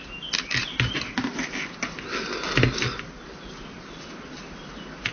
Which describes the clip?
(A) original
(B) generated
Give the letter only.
A